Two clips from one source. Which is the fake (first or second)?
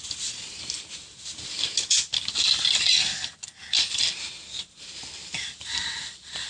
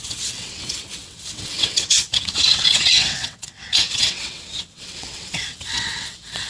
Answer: second